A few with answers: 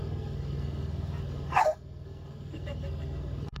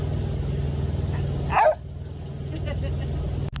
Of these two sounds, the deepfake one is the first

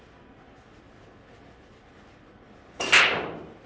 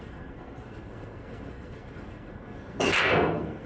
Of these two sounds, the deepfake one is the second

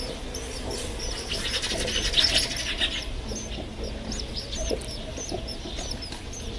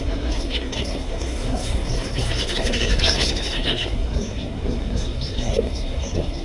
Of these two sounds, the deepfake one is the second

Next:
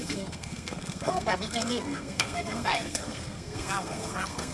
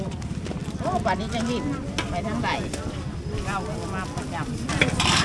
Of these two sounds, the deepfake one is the first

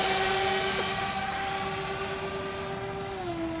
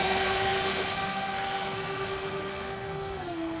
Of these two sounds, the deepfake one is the second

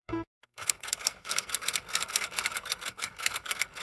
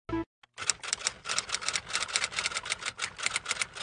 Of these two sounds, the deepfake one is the first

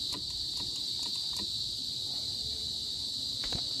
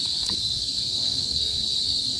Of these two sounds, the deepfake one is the second